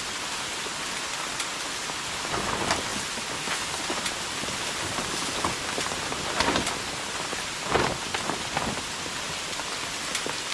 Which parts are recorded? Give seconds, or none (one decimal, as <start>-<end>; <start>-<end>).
0.0-10.5